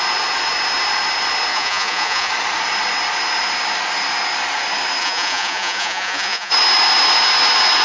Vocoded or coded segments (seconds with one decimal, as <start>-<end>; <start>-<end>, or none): 1.5-2.3; 5.0-6.5